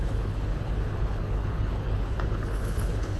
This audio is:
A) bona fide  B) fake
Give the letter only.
B